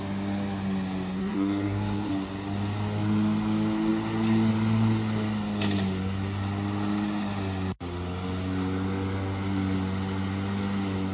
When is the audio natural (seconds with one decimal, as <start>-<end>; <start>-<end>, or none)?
0.0-1.2; 2.1-11.1